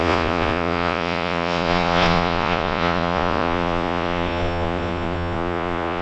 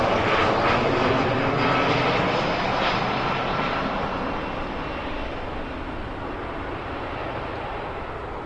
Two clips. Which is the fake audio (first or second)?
first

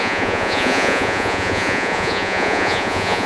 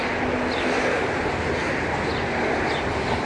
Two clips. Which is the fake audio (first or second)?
first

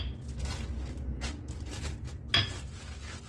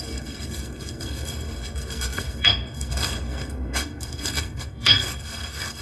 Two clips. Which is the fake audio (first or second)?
second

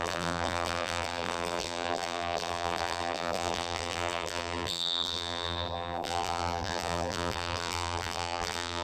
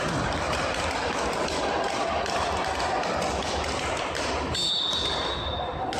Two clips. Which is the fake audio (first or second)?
first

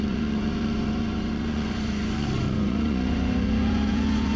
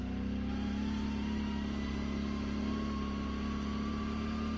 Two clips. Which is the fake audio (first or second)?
first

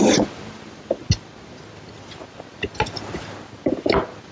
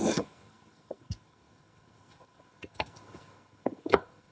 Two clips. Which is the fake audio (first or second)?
second